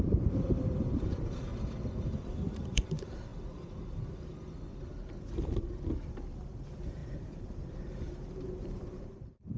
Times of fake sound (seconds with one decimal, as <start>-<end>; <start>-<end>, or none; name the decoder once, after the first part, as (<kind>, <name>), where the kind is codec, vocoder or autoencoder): 0.0-1.5 (vocoder, BigVGAN v2); 2.5-3.3; 6.1-9.6